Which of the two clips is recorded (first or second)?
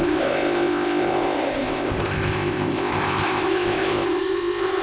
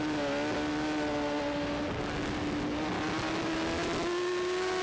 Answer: second